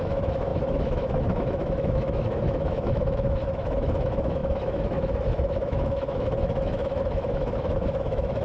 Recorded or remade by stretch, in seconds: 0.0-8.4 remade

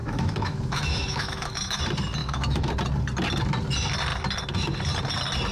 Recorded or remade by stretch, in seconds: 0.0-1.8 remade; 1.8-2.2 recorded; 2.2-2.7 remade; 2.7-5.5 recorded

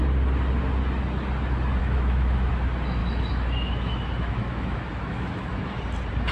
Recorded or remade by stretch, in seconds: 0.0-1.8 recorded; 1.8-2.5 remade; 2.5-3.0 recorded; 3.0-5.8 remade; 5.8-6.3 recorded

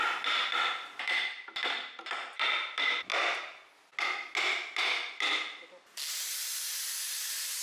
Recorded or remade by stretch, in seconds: 0.0-7.6 recorded

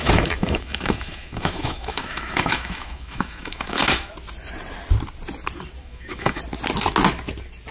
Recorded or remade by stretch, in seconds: 0.0-4.1 remade; 4.1-5.8 recorded; 5.8-6.4 remade; 6.4-7.7 recorded

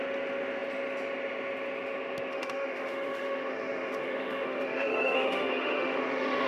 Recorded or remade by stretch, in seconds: 0.0-2.3 recorded; 2.3-6.5 remade

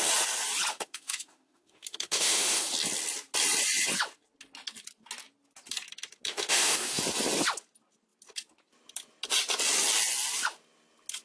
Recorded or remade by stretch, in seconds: 0.0-0.7 recorded; 0.7-2.7 remade; 2.7-6.3 recorded; 6.3-7.0 remade; 7.0-11.2 recorded

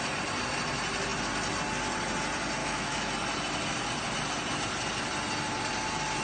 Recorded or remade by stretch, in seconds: 0.0-2.6 recorded; 2.6-3.1 remade; 3.1-6.2 recorded